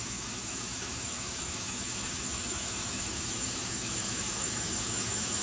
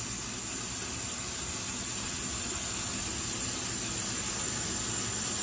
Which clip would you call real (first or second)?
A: second